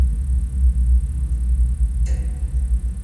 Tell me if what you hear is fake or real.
real